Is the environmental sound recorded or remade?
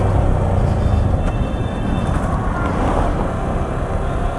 recorded